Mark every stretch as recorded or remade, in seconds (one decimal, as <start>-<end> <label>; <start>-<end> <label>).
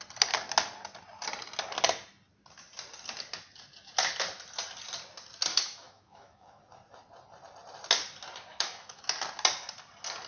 0.0-5.5 recorded; 5.5-6.6 remade; 6.6-8.5 recorded; 8.5-9.0 remade; 9.0-10.3 recorded